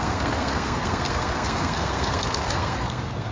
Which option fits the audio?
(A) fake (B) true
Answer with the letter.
A